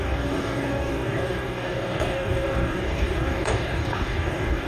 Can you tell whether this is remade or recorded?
remade